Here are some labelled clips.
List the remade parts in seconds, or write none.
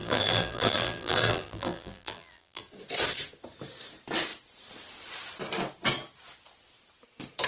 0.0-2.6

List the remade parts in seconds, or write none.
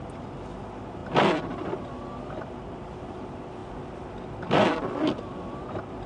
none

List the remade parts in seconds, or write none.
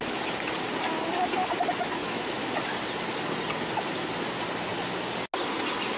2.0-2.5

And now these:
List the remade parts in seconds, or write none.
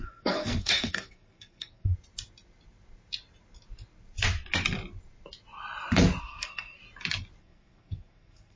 0.0-1.9; 6.2-6.8; 7.4-8.6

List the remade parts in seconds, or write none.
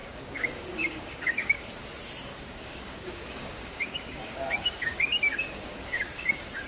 0.0-1.6; 2.3-6.2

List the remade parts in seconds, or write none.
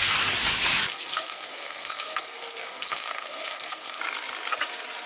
0.9-4.0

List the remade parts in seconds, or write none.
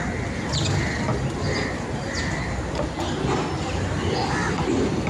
none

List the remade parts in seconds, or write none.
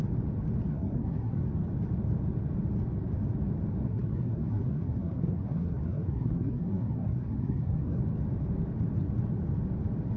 0.7-1.4; 3.8-8.0